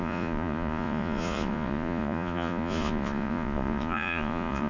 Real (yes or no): no